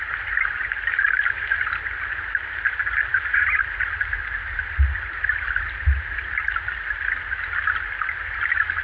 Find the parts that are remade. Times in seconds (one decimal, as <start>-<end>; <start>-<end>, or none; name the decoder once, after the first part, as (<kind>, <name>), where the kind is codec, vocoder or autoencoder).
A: none